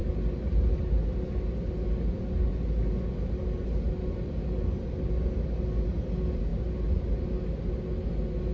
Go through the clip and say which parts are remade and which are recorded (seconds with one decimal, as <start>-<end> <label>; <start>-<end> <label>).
0.0-8.5 recorded